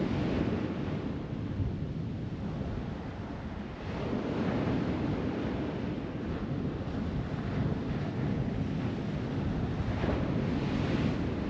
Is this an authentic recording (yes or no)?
yes